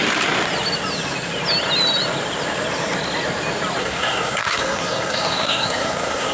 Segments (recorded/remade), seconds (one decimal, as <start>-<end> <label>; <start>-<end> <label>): 0.0-3.8 recorded; 3.8-6.3 remade